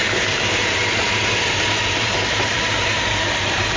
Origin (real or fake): fake